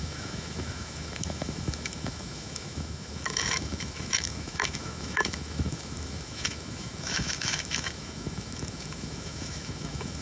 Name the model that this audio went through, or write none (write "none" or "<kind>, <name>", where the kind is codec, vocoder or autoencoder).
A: autoencoder, DAC-VAE